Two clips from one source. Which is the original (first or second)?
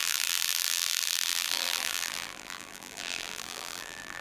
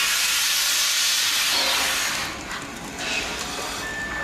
second